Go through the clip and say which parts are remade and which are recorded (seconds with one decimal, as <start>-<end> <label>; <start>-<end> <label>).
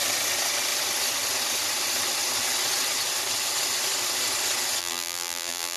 0.0-4.8 recorded; 4.8-5.8 remade